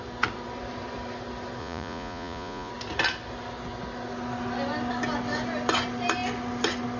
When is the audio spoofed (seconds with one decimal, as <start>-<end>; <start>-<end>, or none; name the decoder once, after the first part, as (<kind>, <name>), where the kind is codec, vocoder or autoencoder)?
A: 1.6-2.7 (vocoder, Vocos)